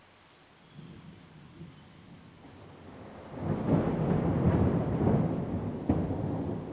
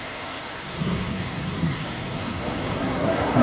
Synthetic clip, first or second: second